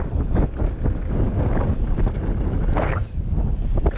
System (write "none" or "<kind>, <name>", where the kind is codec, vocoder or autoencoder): none